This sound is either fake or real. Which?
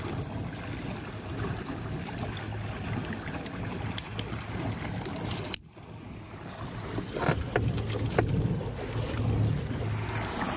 real